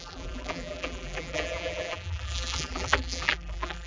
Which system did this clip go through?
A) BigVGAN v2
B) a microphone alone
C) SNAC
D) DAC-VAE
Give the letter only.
A